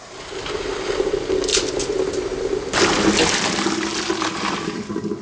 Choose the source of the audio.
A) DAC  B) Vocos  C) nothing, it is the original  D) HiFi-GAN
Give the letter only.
C